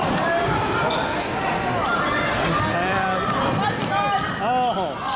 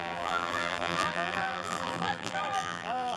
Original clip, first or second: first